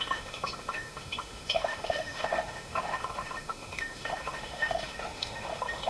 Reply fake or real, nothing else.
fake